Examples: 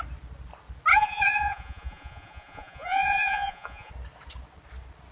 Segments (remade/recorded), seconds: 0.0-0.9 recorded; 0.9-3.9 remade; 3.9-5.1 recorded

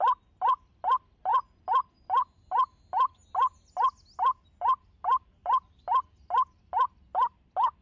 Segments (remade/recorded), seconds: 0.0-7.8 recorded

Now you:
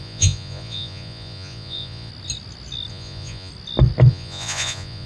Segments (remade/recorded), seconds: 0.0-2.1 remade; 2.1-2.9 recorded; 2.9-3.5 remade; 3.5-4.1 recorded; 4.1-5.1 remade

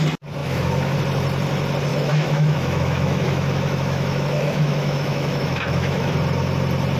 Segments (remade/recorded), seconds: 0.0-0.4 recorded; 0.4-1.0 remade; 1.0-1.9 recorded; 1.9-6.1 remade; 6.1-7.0 recorded